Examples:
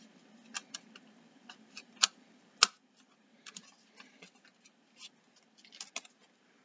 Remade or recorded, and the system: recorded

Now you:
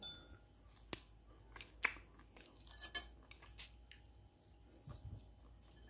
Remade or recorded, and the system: recorded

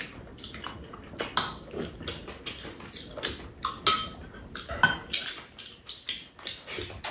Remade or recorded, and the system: recorded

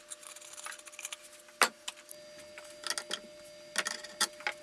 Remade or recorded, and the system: recorded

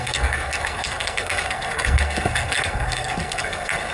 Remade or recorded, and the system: remade, codec, SNAC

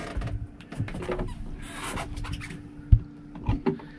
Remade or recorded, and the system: recorded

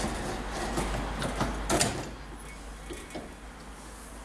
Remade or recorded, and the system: recorded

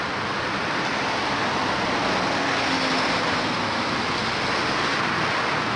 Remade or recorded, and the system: recorded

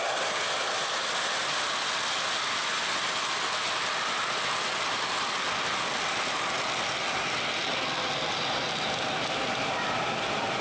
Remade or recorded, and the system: recorded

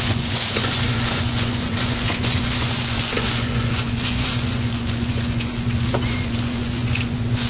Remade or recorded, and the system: remade, vocoder, Vocos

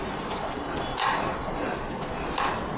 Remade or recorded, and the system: recorded